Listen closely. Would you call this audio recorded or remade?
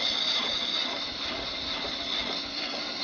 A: recorded